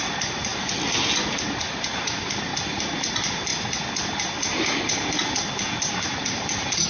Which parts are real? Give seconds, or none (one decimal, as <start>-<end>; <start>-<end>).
0.5-1.4; 2.5-3.1; 3.5-5.9